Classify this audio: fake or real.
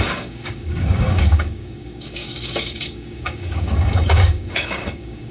fake